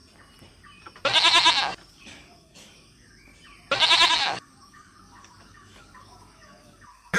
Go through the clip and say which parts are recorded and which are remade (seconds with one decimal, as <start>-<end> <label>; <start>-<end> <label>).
0.0-1.9 recorded; 1.9-3.3 remade; 3.3-4.1 recorded; 4.1-7.2 remade

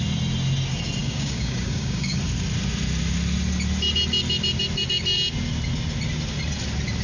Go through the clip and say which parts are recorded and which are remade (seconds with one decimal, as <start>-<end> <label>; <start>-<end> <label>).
0.0-1.0 recorded; 1.0-2.2 remade; 2.2-7.0 recorded